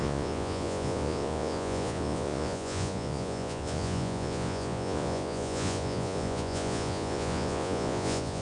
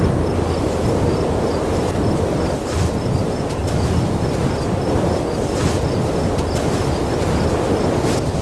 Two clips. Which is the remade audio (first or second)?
first